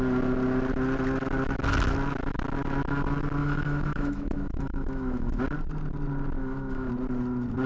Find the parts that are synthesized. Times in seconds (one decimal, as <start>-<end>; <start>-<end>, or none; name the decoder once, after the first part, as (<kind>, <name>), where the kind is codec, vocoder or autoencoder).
3.4-5.4 (autoencoder, DAC-VAE); 6.4-6.9

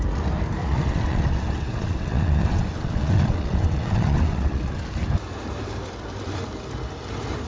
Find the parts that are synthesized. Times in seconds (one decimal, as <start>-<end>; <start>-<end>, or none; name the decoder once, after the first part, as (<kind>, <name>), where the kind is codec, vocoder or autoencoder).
0.6-4.8 (vocoder, WaveNeXt)

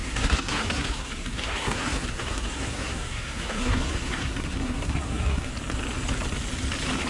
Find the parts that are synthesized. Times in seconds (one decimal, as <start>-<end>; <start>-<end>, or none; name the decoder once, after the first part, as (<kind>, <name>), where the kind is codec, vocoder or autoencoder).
0.0-5.5 (codec, SNAC)

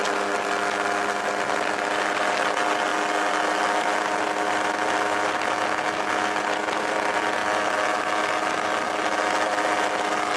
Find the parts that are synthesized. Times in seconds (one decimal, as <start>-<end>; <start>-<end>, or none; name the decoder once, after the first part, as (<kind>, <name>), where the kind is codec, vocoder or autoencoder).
none

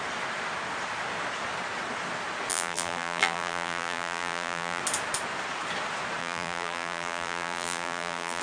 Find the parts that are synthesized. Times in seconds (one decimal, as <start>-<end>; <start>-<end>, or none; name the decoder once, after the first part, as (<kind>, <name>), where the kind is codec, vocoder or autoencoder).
2.5-4.8 (vocoder, BigVGAN v2); 6.2-8.4

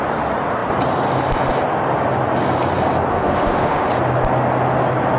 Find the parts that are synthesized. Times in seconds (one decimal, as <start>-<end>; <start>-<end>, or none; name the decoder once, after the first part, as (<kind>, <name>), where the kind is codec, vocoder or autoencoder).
3.1-3.9 (autoencoder, DAC-VAE)